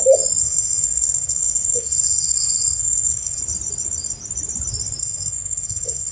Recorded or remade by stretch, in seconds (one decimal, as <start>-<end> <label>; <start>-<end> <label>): 0.0-0.4 recorded; 0.4-3.4 remade; 3.4-5.0 recorded; 5.0-6.1 remade